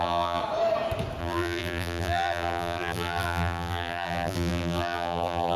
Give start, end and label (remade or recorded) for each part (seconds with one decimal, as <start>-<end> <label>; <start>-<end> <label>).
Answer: 0.0-0.4 remade; 0.4-1.2 recorded; 1.2-5.6 remade